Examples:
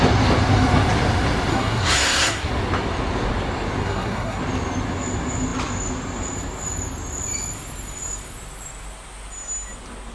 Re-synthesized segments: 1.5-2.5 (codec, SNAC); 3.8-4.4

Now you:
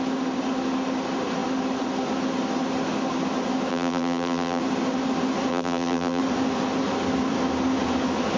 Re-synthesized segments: 3.7-4.6 (vocoder, BigVGAN v2); 5.5-6.2

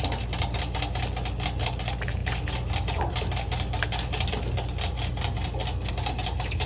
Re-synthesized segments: none

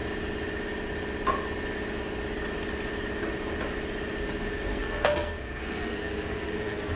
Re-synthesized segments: 4.2-7.0 (codec, SNAC)

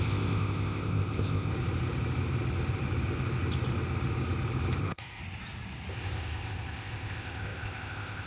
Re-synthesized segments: 0.0-1.5 (codec, ZipCodec); 4.8-5.2; 5.9-8.3